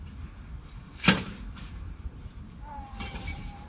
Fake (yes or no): yes